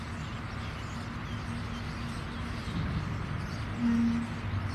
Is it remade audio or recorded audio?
recorded